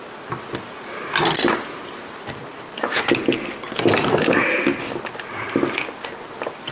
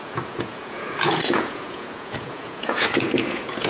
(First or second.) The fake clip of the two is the second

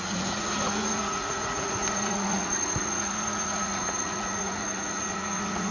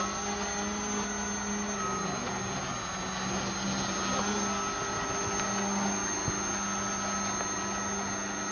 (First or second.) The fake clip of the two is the first